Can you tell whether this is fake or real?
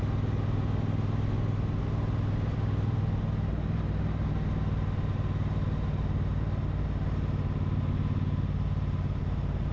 real